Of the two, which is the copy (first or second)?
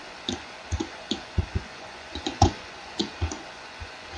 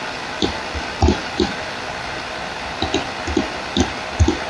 first